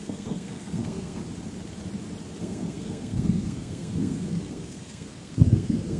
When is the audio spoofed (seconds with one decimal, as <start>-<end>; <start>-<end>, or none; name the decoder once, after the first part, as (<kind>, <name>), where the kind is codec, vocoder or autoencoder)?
0.0-1.2 (codec, SNAC); 2.4-6.0